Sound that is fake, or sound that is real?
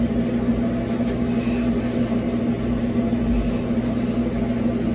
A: real